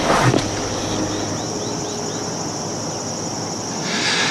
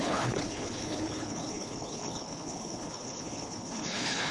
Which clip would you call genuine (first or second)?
first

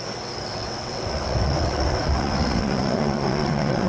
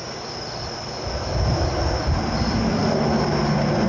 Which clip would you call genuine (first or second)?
second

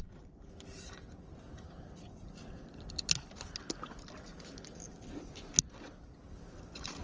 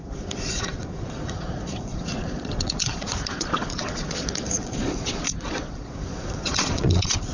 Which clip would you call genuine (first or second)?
first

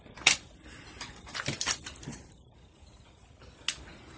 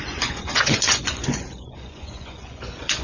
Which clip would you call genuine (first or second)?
first